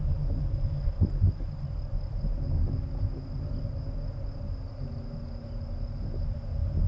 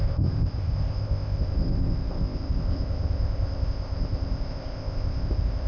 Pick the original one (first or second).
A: first